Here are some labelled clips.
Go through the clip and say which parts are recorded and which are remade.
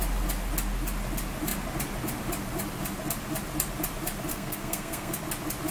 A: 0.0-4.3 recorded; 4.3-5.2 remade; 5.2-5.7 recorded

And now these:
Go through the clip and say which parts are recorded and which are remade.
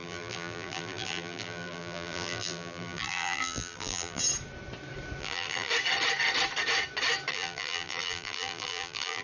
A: 0.0-4.2 remade; 4.2-5.2 recorded; 5.2-5.7 remade; 5.7-7.3 recorded; 7.3-9.2 remade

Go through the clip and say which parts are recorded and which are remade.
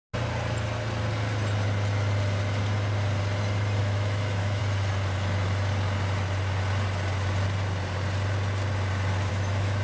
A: 0.0-3.8 recorded; 3.8-4.6 remade; 4.6-9.3 recorded; 9.3-9.8 remade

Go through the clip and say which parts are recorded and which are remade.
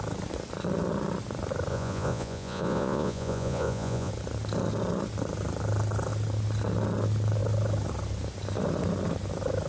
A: 0.0-1.7 recorded; 1.7-4.1 remade; 4.1-9.7 recorded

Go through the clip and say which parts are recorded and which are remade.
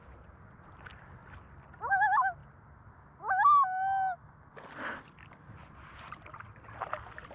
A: 0.0-7.3 recorded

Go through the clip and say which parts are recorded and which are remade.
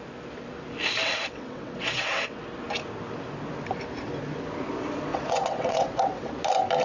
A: 0.0-1.0 recorded; 1.0-2.4 remade; 2.4-5.1 recorded; 5.1-6.3 remade; 6.3-6.8 recorded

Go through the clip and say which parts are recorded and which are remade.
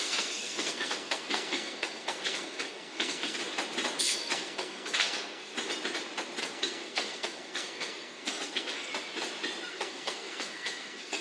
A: 0.0-3.4 remade; 3.4-4.0 recorded; 4.0-5.5 remade; 5.5-6.4 recorded; 6.4-8.9 remade; 8.9-9.7 recorded; 9.7-11.2 remade